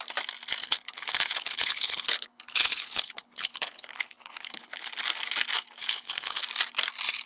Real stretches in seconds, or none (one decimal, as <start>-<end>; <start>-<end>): 0.0-0.6; 4.9-5.8; 6.4-7.3